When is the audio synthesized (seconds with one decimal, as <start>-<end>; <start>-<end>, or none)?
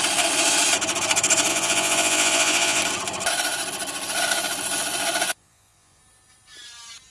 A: 1.5-2.8; 5.3-6.0